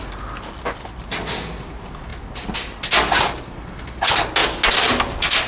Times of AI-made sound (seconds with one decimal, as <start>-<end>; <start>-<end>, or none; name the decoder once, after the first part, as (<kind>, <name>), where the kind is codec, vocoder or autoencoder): none